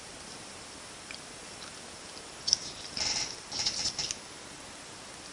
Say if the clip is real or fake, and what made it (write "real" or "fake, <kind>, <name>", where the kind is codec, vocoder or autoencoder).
real